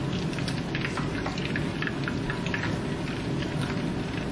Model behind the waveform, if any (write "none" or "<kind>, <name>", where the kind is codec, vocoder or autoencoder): none